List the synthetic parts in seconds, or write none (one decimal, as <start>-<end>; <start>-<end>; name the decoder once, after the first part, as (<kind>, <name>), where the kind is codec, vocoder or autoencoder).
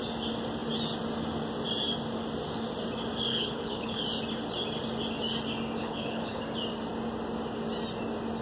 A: 3.3-4.0 (codec, HILCodec); 5.8-6.4